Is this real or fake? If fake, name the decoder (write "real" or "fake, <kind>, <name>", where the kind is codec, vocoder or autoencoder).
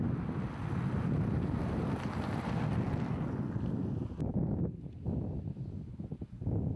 real